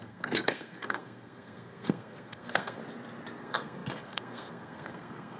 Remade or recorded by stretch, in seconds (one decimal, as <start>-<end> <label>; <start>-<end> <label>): 0.0-2.8 remade; 2.8-3.4 recorded; 3.4-5.4 remade